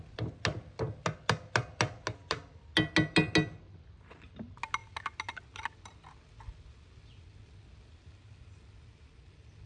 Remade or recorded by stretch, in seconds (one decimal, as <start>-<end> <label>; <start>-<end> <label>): 0.0-9.7 recorded